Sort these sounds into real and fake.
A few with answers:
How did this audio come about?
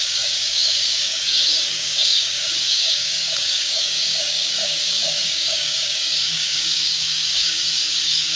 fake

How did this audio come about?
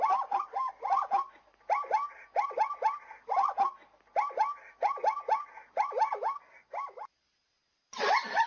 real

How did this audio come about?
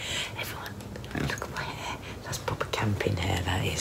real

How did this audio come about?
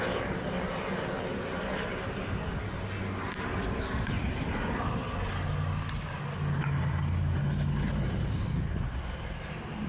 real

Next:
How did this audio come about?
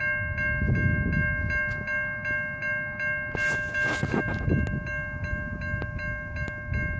real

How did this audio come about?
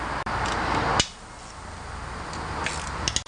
real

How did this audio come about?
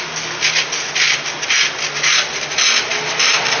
real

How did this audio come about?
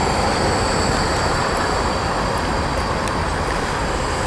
real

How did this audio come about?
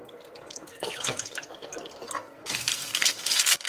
fake